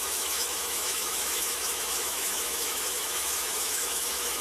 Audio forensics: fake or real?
fake